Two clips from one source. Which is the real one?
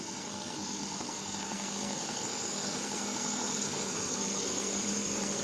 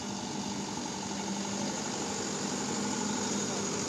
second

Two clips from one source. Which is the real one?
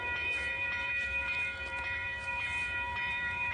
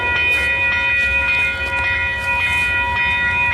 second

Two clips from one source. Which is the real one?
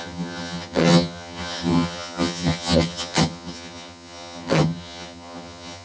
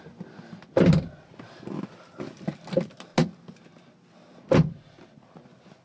second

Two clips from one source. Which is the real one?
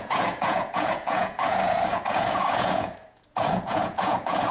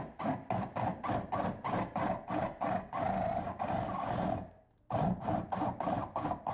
second